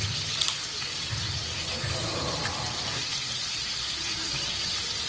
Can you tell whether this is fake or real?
real